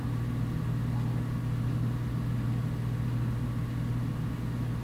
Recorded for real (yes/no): yes